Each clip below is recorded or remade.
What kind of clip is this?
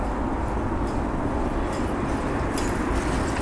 recorded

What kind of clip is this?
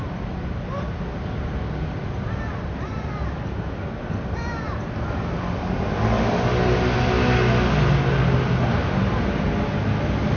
recorded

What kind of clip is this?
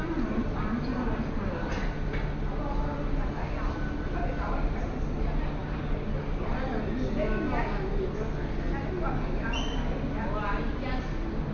recorded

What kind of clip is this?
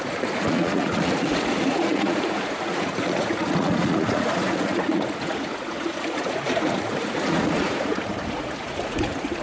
remade